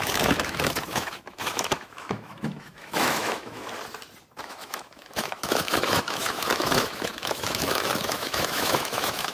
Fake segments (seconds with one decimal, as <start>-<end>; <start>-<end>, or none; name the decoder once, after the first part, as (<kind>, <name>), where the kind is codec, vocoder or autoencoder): 0.0-3.6 (autoencoder, DAC-VAE); 4.4-9.3